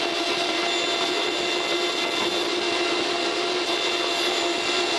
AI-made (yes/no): no